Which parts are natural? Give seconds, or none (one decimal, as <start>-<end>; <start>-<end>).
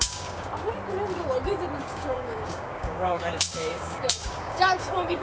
0.5-1.8